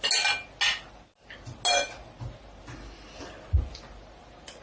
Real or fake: real